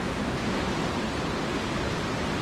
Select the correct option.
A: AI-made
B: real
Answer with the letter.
B